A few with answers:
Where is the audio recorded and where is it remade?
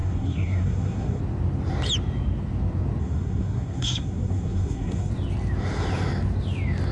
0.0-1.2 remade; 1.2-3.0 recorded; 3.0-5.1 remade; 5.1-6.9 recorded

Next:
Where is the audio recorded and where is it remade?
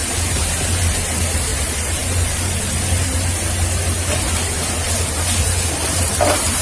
0.0-6.6 recorded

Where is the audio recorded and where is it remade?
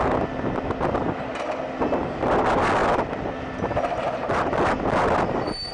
0.0-5.7 recorded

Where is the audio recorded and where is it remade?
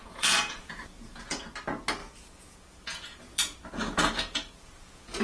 0.0-1.4 remade; 1.4-2.0 recorded; 2.0-5.2 remade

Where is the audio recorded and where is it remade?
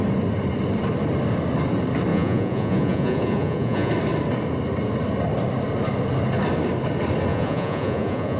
0.0-2.1 recorded; 2.1-3.9 remade; 3.9-7.3 recorded; 7.3-8.4 remade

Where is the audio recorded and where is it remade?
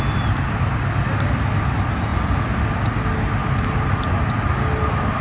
0.0-5.2 recorded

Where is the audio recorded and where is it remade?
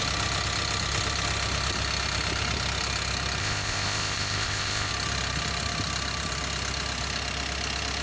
0.0-3.4 recorded; 3.4-4.9 remade; 4.9-8.0 recorded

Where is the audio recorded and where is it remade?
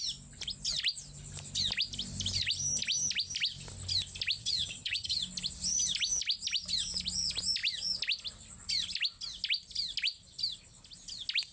0.0-4.4 recorded; 4.4-5.2 remade; 5.2-11.5 recorded